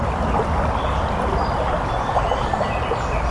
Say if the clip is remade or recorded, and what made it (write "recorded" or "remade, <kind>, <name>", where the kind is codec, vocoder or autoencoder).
recorded